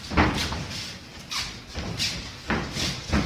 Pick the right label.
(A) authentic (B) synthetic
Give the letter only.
A